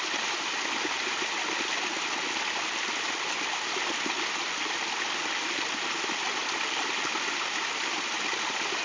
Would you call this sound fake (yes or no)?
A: no